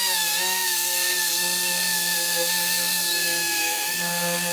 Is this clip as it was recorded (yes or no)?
no